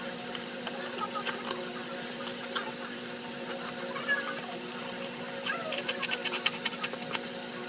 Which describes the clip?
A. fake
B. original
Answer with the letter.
B